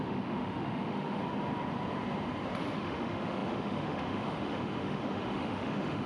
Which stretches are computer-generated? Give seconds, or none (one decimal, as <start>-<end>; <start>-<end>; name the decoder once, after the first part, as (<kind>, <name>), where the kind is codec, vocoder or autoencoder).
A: 0.0-1.2 (autoencoder, DAC-VAE); 2.8-6.1